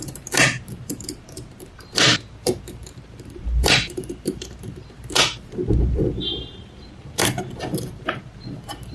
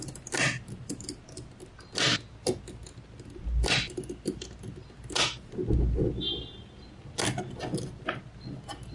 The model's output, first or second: first